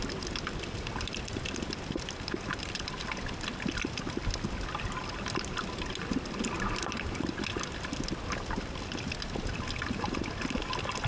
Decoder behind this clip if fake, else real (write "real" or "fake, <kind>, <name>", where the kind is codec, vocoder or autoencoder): real